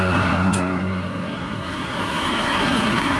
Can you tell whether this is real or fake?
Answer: fake